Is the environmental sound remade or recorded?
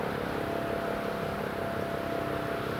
recorded